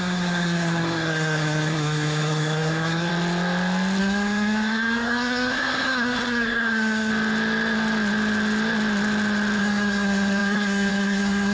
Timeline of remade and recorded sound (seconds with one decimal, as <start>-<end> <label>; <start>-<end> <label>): 0.0-3.1 remade; 3.1-4.0 recorded; 4.0-7.1 remade; 7.1-9.6 recorded; 9.6-11.5 remade